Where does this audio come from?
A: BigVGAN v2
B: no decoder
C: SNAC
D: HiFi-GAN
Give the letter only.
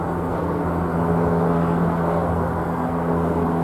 C